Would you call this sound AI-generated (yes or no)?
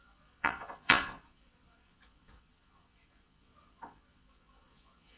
yes